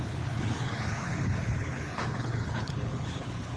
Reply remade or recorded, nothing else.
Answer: remade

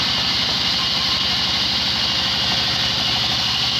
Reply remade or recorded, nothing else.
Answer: recorded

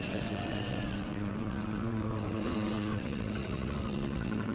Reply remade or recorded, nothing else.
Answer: remade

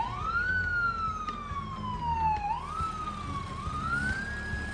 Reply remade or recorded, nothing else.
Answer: recorded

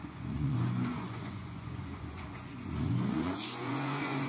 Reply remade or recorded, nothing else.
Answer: remade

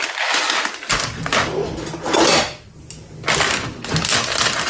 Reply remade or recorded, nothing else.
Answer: recorded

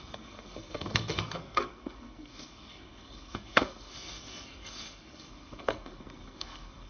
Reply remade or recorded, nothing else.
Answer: remade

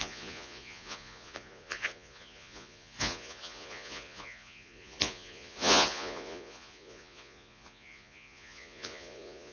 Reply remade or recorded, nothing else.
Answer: remade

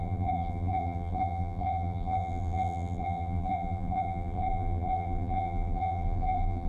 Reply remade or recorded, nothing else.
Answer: remade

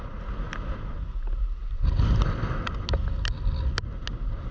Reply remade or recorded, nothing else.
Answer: recorded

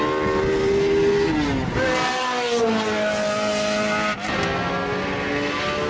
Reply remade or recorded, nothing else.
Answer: recorded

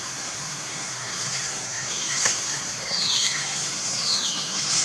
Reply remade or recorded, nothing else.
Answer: remade